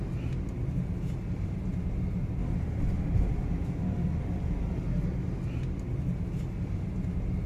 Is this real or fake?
real